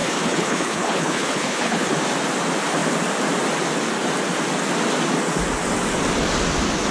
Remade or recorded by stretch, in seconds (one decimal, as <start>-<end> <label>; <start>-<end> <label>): 0.0-1.9 remade; 1.9-6.9 recorded

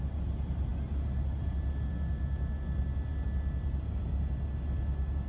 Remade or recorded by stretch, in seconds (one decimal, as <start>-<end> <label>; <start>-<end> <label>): 0.0-5.3 recorded

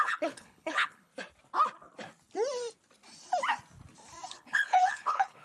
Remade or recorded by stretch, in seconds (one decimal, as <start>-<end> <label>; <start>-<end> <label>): 0.0-1.1 remade; 1.1-4.3 recorded; 4.3-5.4 remade

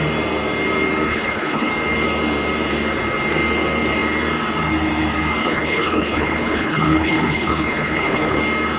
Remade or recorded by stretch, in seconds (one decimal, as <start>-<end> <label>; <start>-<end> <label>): 0.0-1.1 recorded; 1.1-1.7 remade; 1.7-5.4 recorded; 5.4-8.4 remade; 8.4-8.8 recorded

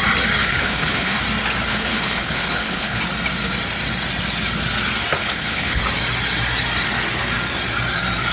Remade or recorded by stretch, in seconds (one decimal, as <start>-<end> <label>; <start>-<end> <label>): 0.0-0.4 recorded; 0.4-1.2 remade; 1.2-1.7 recorded; 1.7-3.0 remade; 3.0-5.2 recorded; 5.2-5.8 remade; 5.8-8.3 recorded

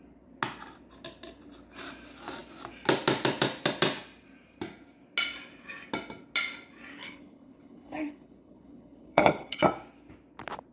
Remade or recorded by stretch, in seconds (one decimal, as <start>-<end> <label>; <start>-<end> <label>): 0.0-6.9 recorded; 6.9-9.6 remade; 9.6-10.7 recorded

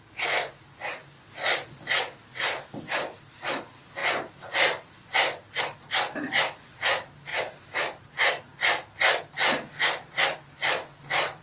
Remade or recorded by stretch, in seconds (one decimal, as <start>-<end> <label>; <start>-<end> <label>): 0.0-11.4 recorded